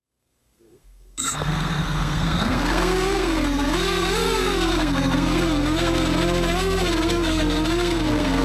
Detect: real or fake fake